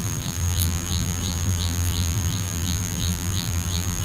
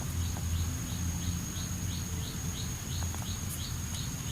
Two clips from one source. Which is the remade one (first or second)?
first